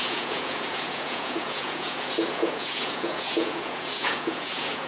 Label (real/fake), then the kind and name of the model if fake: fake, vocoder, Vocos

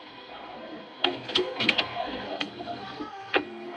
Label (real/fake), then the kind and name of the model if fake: fake, codec, SNAC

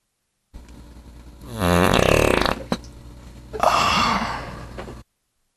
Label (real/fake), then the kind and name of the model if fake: real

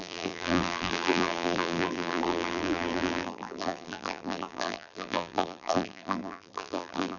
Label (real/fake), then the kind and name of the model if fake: fake, vocoder, BigVGAN v2